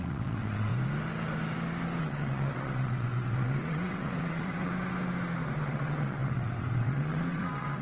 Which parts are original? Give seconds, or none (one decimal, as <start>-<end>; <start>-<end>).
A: 0.7-2.0; 4.7-5.6